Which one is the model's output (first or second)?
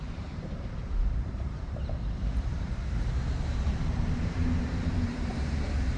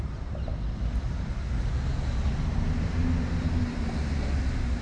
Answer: first